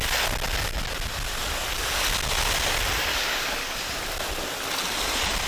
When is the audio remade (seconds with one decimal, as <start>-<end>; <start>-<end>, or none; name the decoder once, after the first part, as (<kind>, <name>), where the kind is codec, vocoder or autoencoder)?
3.1-3.8 (codec, DAC)